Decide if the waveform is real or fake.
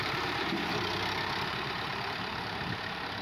fake